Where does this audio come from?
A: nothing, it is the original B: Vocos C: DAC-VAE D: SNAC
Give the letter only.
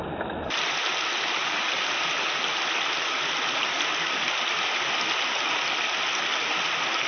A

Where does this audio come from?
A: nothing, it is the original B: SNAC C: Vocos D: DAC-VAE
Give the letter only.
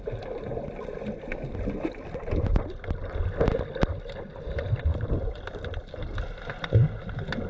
A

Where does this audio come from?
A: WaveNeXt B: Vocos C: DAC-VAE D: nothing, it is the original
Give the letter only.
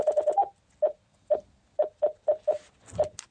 D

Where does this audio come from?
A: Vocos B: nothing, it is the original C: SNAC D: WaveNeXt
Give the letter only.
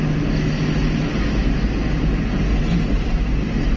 B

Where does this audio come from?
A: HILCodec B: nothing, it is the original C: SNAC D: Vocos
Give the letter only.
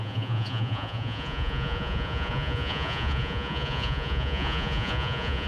D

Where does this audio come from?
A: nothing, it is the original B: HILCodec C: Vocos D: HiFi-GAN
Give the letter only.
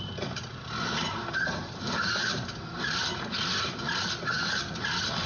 A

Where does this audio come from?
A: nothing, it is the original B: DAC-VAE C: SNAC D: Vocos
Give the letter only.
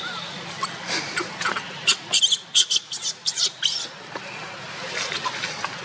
A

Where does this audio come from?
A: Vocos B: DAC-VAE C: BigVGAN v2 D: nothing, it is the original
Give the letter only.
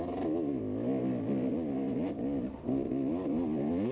D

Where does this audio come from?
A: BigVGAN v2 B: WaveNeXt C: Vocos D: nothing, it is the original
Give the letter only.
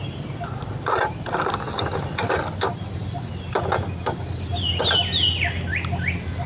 D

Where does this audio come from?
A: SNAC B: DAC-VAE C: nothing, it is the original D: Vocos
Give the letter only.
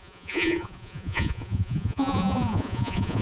D